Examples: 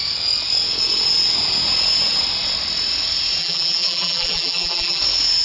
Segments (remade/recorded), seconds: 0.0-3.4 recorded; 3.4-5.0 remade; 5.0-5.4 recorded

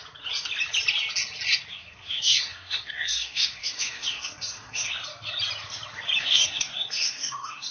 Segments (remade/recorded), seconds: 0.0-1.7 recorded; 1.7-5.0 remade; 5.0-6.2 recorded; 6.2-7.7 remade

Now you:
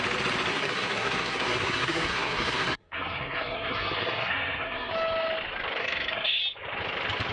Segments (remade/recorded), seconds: 0.0-0.5 recorded; 0.5-4.9 remade; 4.9-5.8 recorded; 5.8-6.4 remade; 6.4-7.3 recorded

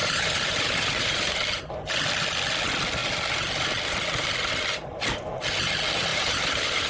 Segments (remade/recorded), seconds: 0.0-1.3 remade; 1.3-6.1 recorded; 6.1-6.9 remade

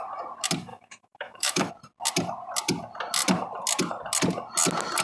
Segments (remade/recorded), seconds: 0.0-0.7 recorded; 0.7-1.7 remade; 1.7-5.0 recorded

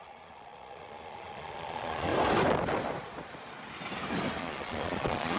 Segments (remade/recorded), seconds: 0.0-2.1 remade; 2.1-4.4 recorded; 4.4-5.4 remade

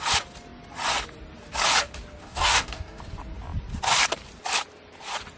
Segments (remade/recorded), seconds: 0.0-2.2 recorded; 2.2-3.0 remade; 3.0-5.4 recorded